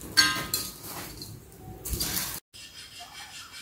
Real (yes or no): yes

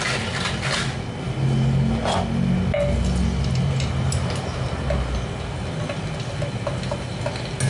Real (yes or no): yes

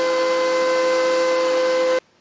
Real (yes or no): yes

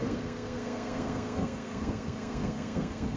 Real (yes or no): no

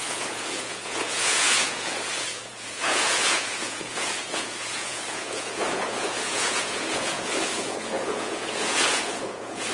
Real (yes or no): no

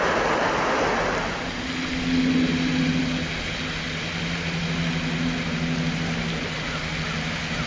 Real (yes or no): yes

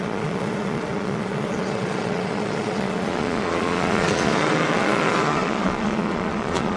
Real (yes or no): no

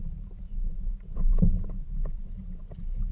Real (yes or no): no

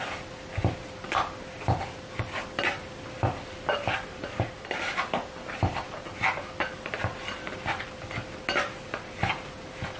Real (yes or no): yes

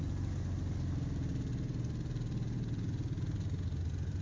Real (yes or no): yes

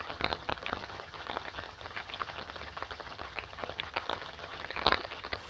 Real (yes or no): no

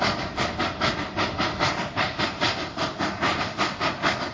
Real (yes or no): yes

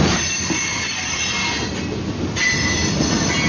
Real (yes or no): yes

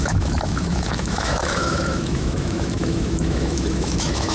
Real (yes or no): no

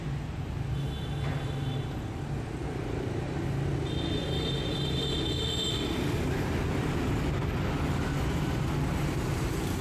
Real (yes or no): yes